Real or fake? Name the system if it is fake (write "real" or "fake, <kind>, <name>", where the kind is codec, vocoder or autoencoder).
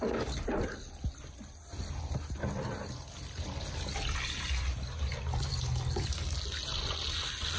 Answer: real